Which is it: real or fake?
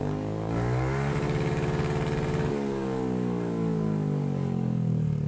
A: fake